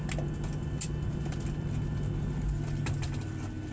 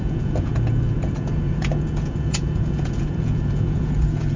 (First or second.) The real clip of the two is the first